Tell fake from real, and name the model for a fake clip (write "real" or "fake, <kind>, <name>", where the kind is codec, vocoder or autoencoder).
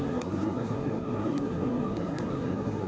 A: fake, codec, SNAC